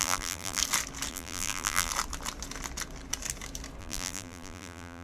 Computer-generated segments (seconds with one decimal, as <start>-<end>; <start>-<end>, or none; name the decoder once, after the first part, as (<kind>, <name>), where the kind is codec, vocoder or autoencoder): 0.0-0.6 (vocoder, BigVGAN v2); 1.1-1.9; 3.8-5.0